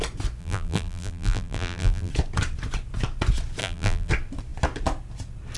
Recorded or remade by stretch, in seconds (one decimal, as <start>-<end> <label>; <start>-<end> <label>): 0.0-0.4 recorded; 0.4-2.1 remade; 2.1-3.6 recorded; 3.6-4.1 remade; 4.1-5.6 recorded

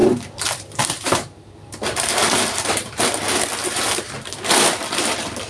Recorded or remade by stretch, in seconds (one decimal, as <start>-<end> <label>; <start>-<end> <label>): 0.0-3.0 remade; 3.0-3.6 recorded; 3.6-4.3 remade; 4.3-5.5 recorded

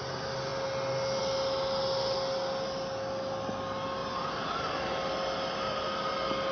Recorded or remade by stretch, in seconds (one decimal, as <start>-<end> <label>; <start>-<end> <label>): 0.0-4.0 recorded; 4.0-4.5 remade; 4.5-6.5 recorded

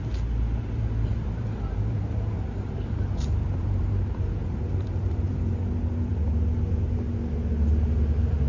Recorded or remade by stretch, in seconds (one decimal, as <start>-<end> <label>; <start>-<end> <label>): 0.0-1.1 recorded; 1.1-5.6 remade; 5.6-8.5 recorded